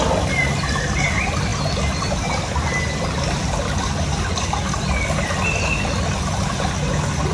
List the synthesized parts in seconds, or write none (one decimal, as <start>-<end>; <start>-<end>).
none